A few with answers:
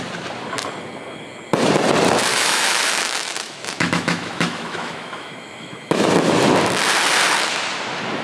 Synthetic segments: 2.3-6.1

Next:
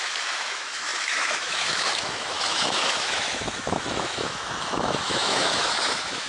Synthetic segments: 0.0-6.3

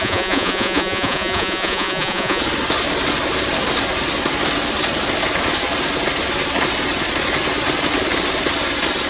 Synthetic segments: 0.0-2.4

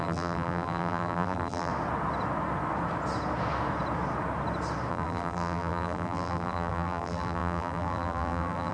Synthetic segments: 0.0-1.7; 4.9-8.7